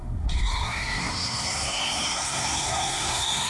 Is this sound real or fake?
fake